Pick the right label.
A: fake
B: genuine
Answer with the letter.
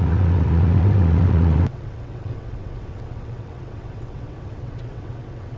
A